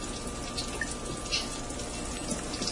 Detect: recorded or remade recorded